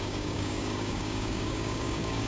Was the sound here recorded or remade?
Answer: remade